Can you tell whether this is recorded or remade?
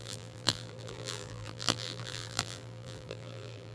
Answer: remade